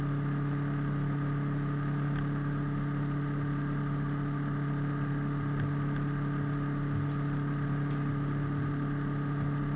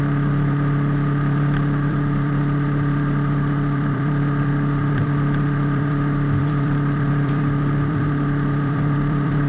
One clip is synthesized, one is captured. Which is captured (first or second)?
first